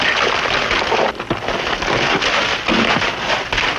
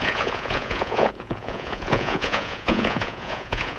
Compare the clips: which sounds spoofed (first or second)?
second